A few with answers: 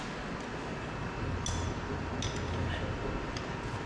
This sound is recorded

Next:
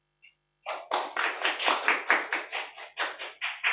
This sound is recorded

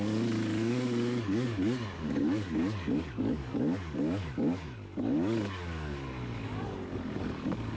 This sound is remade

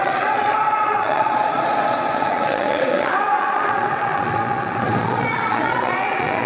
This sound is remade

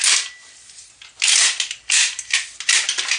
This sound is recorded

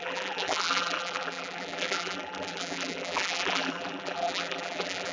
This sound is remade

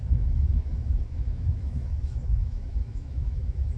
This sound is remade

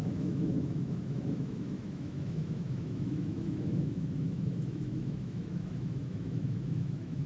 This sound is remade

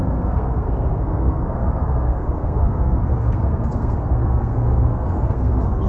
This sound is remade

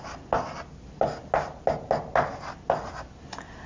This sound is recorded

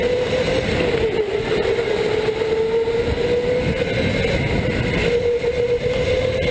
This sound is recorded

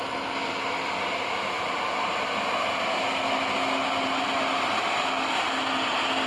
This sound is recorded